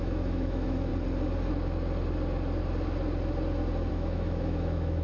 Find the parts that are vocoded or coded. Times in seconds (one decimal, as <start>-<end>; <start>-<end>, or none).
0.0-0.9; 3.9-5.0